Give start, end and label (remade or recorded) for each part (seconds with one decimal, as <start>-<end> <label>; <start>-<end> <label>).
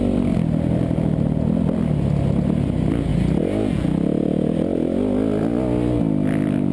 0.0-6.7 recorded